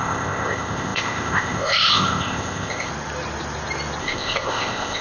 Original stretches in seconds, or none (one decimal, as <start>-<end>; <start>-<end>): 2.9-4.0